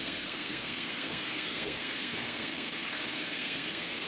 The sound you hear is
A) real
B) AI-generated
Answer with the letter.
B